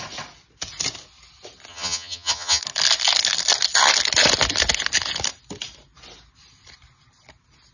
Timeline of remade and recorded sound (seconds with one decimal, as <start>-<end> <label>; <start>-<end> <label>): 0.0-1.7 recorded; 1.7-2.6 remade; 2.6-7.7 recorded